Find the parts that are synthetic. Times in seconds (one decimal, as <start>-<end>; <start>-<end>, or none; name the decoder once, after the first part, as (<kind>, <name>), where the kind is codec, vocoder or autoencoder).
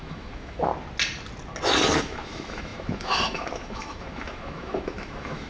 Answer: 0.0-0.7 (autoencoder, DAC-VAE); 2.0-5.5